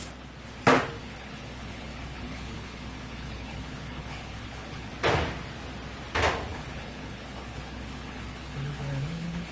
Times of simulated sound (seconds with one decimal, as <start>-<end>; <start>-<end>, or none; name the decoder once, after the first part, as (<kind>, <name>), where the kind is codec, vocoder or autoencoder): 1.0-4.9 (codec, HILCodec); 6.5-9.5